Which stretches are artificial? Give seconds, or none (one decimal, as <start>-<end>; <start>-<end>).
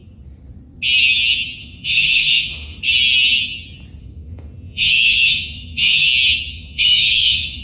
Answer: 1.6-2.8; 4.0-6.1; 6.5-7.6